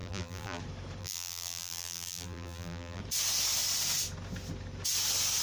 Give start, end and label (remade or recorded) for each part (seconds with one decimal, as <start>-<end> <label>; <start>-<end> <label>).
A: 0.0-0.6 remade; 0.6-1.0 recorded; 1.0-3.0 remade; 3.0-5.4 recorded